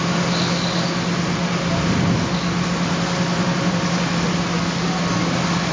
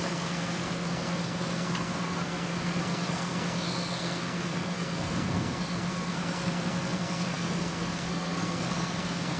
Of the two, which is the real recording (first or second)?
first